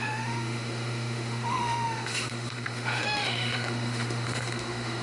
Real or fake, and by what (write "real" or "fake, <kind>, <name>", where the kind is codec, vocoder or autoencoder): fake, autoencoder, DAC-VAE